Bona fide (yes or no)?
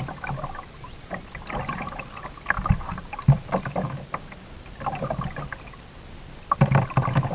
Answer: yes